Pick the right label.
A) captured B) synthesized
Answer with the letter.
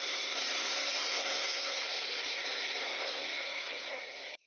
B